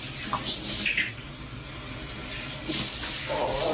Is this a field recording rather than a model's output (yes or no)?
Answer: yes